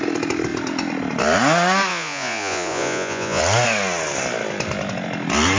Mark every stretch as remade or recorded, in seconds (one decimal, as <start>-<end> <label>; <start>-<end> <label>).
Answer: 0.0-1.9 recorded; 1.9-3.4 remade; 3.4-5.6 recorded